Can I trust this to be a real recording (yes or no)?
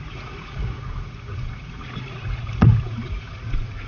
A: no